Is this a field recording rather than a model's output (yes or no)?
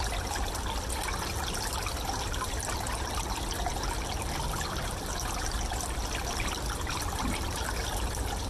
yes